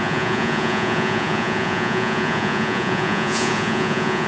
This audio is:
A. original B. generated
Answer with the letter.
B